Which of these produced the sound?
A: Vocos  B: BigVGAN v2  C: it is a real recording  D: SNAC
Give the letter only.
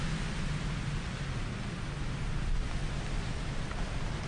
C